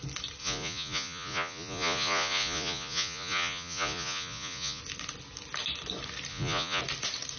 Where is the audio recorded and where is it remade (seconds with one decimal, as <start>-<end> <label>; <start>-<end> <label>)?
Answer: 0.0-0.4 recorded; 0.4-4.8 remade; 4.8-6.3 recorded; 6.3-6.8 remade; 6.8-7.4 recorded